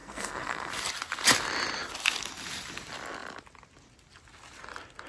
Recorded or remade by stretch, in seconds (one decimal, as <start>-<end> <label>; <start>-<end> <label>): 0.0-0.7 remade; 0.7-5.1 recorded